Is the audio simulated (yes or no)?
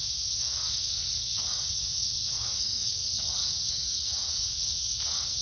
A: yes